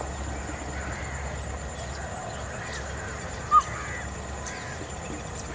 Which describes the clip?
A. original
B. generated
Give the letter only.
A